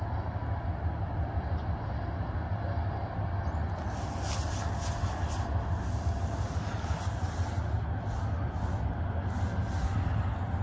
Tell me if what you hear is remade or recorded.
recorded